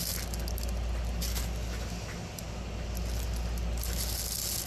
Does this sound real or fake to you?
real